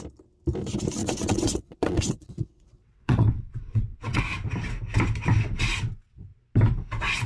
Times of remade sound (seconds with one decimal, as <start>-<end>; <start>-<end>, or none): 1.0-4.2